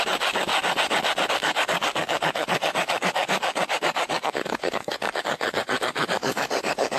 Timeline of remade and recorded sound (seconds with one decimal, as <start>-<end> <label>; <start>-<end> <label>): 0.0-0.5 remade; 0.5-1.3 recorded; 1.3-7.0 remade